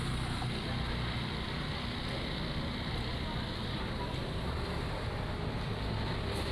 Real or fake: real